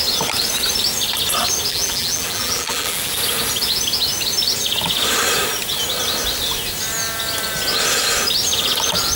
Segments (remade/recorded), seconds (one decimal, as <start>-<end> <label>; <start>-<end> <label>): 0.0-1.7 recorded; 1.7-3.1 remade; 3.1-9.2 recorded